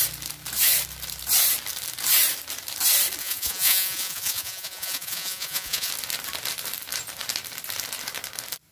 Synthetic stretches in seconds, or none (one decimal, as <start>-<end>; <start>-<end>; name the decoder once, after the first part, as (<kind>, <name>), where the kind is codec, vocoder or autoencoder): 3.2-5.9 (vocoder, Vocos)